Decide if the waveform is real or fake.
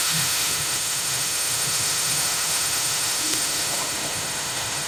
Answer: fake